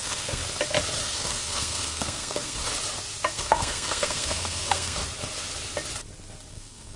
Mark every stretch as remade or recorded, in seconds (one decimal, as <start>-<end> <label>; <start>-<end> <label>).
0.0-0.4 remade; 0.4-1.0 recorded; 1.0-2.7 remade; 2.7-3.3 recorded; 3.3-5.0 remade; 5.0-6.5 recorded; 6.5-7.0 remade